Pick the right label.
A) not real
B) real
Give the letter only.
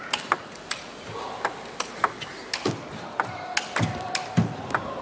B